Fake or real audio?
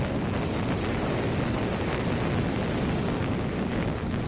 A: real